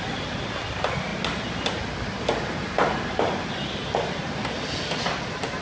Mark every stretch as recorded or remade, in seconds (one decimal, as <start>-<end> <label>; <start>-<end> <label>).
0.0-5.6 recorded